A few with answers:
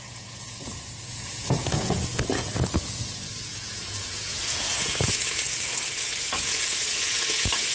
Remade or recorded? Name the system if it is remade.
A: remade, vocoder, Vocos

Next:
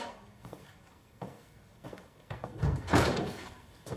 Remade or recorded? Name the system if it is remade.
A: remade, codec, SNAC